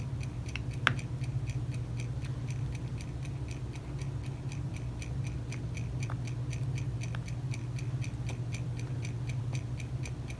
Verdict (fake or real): real